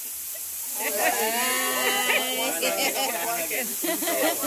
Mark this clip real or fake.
real